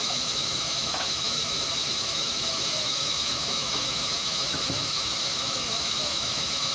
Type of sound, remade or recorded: remade